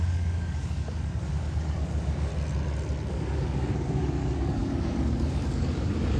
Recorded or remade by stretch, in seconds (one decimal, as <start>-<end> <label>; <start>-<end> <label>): 0.0-2.3 remade; 2.3-3.1 recorded; 3.1-6.2 remade